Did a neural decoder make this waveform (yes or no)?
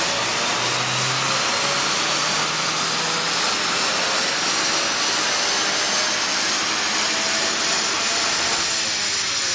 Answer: no